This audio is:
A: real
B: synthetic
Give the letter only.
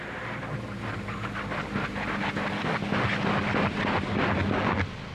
A